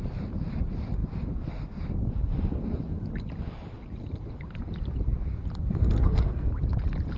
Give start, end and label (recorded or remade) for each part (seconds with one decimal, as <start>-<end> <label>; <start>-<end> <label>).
0.0-5.7 recorded; 5.7-6.5 remade; 6.5-7.2 recorded